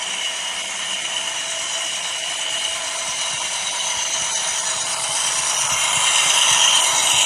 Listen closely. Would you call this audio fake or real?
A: real